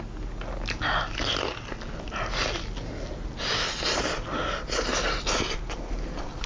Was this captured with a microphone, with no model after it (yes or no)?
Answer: yes